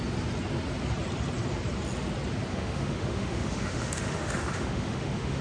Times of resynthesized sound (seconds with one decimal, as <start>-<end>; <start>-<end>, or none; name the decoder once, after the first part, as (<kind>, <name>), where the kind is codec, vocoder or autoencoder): 2.5-5.4 (autoencoder, DAC-VAE)